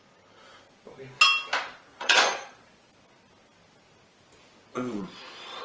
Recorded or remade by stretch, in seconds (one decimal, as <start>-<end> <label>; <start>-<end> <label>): 0.0-1.9 recorded; 1.9-2.9 remade; 2.9-4.7 recorded; 4.7-5.6 remade